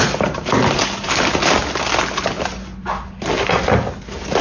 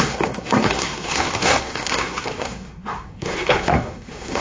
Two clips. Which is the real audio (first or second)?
first